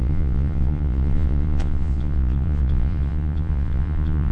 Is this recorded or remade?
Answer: remade